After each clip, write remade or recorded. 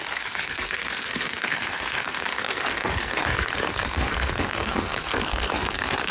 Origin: remade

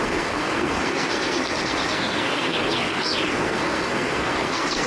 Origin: remade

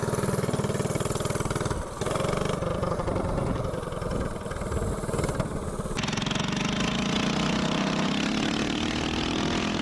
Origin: recorded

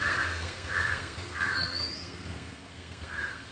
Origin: remade